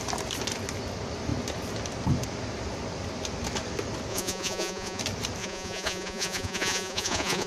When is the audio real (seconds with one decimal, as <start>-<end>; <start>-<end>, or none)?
0.0-4.1; 5.0-5.4